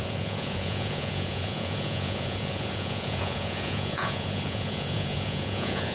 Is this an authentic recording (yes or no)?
no